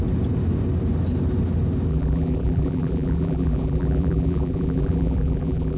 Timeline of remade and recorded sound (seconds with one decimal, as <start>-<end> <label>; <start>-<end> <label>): 0.0-1.9 recorded; 1.9-5.8 remade